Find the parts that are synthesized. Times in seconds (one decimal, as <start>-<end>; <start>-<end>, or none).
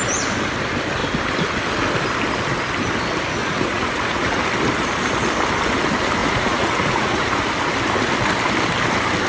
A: 3.4-4.4; 6.2-7.4